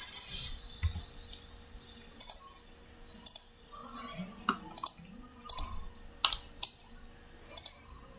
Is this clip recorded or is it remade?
recorded